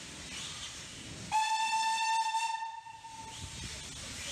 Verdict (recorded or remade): recorded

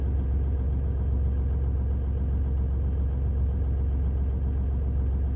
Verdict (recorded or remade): recorded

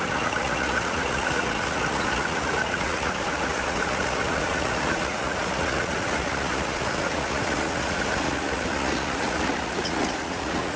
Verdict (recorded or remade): remade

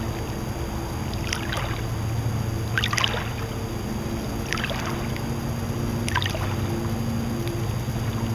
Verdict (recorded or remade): recorded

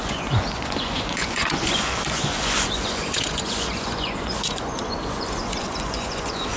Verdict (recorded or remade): remade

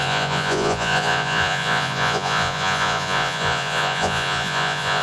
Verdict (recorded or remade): remade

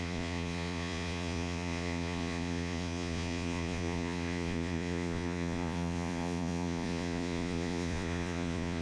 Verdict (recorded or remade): remade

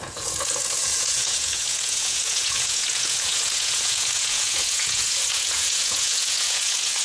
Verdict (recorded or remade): remade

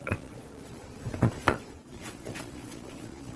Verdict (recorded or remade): remade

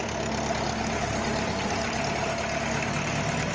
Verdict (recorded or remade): recorded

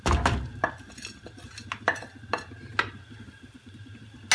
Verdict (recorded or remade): recorded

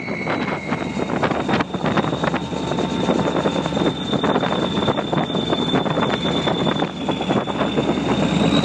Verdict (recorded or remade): recorded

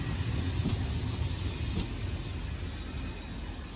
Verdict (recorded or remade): recorded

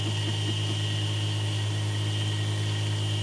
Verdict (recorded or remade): recorded